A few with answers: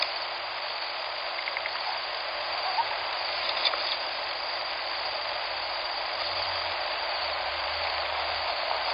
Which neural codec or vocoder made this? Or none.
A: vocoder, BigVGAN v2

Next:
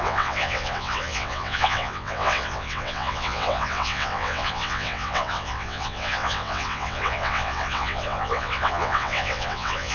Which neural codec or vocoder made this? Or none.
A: vocoder, WaveNeXt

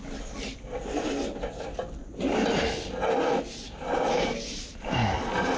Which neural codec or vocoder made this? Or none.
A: none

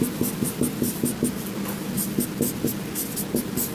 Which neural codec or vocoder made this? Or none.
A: none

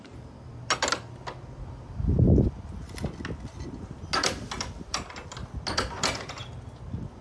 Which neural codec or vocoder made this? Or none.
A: none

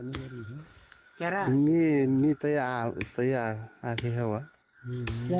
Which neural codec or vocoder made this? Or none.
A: codec, DAC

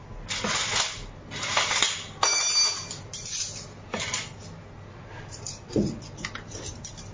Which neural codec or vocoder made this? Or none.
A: none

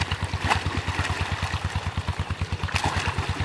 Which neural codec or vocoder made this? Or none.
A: none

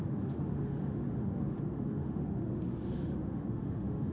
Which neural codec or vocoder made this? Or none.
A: autoencoder, DAC-VAE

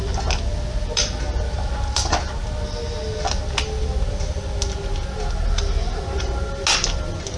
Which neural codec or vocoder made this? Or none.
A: none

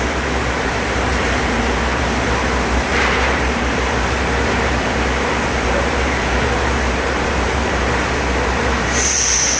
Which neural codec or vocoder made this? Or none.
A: vocoder, BigVGAN v2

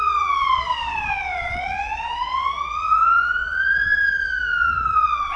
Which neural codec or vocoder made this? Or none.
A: vocoder, Vocos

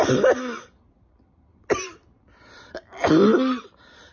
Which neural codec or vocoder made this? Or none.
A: none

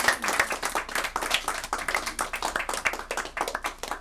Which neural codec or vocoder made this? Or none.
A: none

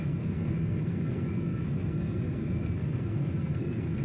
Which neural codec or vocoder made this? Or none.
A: codec, SNAC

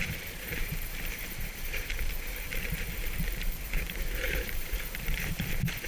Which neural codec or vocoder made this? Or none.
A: vocoder, BigVGAN v2